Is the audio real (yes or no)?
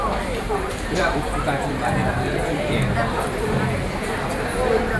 no